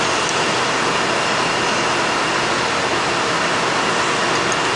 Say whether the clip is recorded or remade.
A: recorded